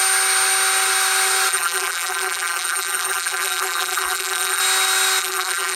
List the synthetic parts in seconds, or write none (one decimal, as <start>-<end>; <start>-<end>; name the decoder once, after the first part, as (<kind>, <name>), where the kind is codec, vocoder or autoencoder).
1.5-4.6 (vocoder, BigVGAN v2); 5.2-5.8